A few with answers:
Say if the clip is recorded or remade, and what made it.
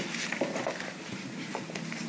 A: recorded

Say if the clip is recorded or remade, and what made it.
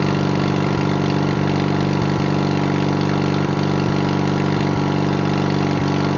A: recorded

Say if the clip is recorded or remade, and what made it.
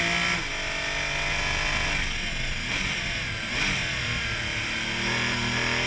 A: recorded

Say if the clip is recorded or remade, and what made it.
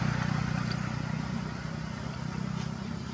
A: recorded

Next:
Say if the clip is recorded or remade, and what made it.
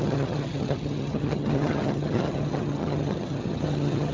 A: remade, vocoder, HiFi-GAN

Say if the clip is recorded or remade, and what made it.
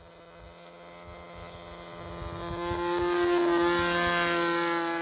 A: recorded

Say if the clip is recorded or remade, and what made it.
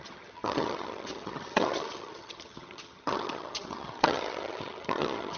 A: remade, vocoder, HiFi-GAN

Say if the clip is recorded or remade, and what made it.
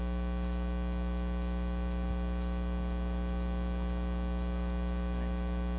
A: recorded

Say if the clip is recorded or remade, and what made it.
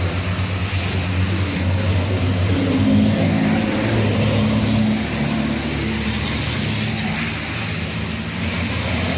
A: recorded